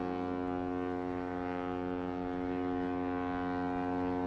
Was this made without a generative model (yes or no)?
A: yes